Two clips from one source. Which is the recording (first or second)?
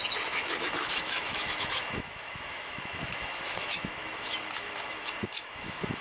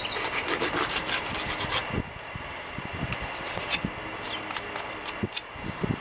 second